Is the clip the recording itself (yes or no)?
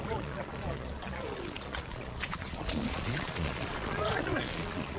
no